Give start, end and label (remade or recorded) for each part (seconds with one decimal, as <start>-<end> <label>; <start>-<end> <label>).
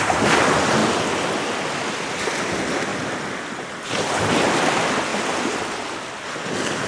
0.0-6.9 recorded